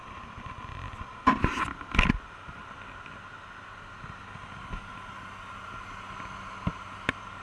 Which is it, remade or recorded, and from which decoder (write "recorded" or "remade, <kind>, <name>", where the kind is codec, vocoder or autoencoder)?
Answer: recorded